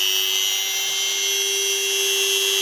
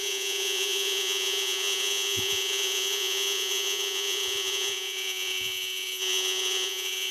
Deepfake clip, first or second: second